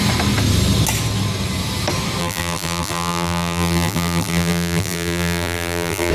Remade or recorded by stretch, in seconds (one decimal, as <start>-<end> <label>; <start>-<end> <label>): 0.0-2.2 recorded; 2.2-6.1 remade

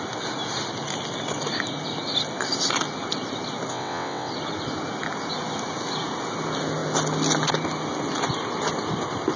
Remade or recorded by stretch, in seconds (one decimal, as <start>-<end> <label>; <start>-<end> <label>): 0.0-3.7 recorded; 3.7-4.3 remade; 4.3-9.4 recorded

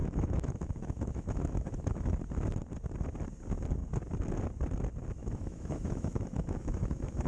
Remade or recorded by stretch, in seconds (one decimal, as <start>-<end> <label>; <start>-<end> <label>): 0.0-2.2 remade; 2.2-5.2 recorded; 5.2-7.3 remade

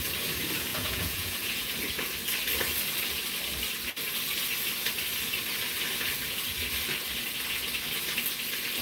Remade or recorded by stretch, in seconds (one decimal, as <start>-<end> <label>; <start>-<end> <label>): 0.0-0.7 recorded; 0.7-1.7 remade; 1.7-8.8 recorded

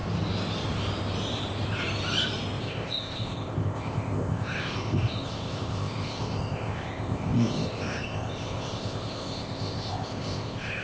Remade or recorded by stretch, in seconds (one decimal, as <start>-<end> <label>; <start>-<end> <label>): 0.0-2.6 recorded; 2.6-10.8 remade

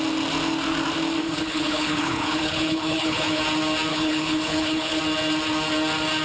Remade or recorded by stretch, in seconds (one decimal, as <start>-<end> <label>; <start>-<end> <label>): 0.0-1.2 recorded; 1.2-3.4 remade; 3.4-3.9 recorded; 3.9-5.0 remade; 5.0-6.2 recorded

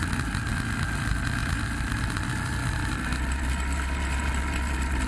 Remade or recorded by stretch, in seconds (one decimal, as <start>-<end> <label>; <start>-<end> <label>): 0.0-5.1 recorded